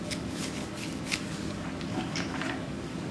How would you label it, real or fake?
fake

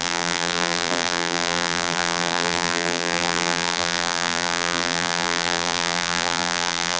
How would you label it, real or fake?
fake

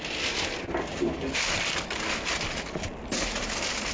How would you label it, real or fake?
real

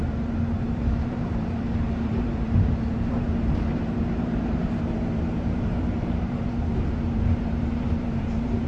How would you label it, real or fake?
fake